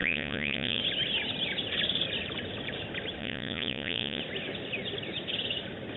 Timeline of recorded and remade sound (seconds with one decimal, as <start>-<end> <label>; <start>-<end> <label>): 0.0-0.8 remade; 0.8-3.2 recorded; 3.2-4.2 remade; 4.2-6.0 recorded